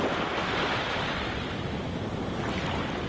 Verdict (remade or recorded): recorded